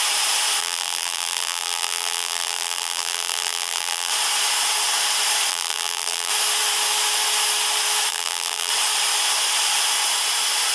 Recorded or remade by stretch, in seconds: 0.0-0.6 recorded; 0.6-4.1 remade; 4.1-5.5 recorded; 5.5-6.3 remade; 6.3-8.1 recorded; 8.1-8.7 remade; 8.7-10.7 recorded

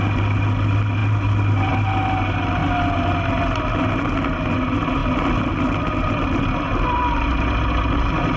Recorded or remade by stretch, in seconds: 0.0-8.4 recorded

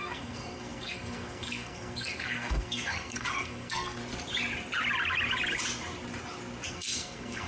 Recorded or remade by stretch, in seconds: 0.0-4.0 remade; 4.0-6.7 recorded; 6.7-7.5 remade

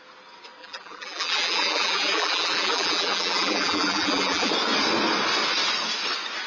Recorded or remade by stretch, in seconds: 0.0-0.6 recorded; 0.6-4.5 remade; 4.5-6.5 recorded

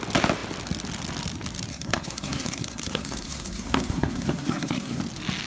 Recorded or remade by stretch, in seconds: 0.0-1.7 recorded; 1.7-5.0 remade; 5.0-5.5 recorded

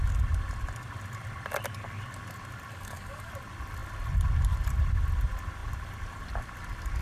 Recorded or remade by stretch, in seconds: 0.0-2.7 recorded; 2.7-3.3 remade; 3.3-7.0 recorded